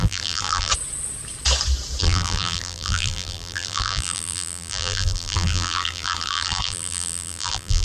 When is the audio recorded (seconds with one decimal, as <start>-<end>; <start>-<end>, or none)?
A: 0.7-2.0

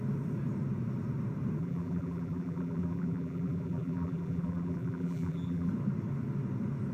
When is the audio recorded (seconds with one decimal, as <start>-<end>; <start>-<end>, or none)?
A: 0.0-1.6; 5.7-6.9